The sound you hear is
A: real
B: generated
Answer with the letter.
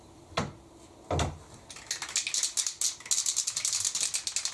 A